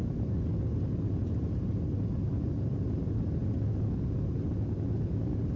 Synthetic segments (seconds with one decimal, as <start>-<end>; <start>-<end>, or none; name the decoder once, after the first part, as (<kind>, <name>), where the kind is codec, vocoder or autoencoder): none